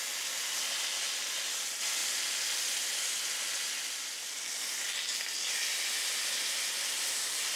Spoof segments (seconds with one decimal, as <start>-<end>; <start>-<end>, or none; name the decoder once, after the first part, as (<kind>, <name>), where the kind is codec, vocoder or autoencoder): none

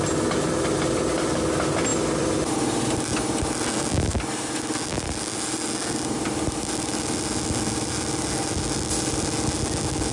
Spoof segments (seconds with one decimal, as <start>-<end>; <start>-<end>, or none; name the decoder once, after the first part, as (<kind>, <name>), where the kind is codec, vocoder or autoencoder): none

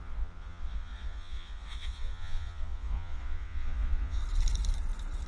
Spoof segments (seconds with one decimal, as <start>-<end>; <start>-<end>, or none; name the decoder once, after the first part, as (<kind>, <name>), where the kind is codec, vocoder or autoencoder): 0.0-4.2 (vocoder, Vocos)

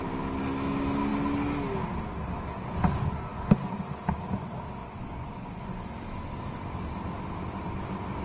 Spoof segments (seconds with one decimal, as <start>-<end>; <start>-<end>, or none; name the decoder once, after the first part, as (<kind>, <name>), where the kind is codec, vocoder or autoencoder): 4.8-5.8 (vocoder, Vocos)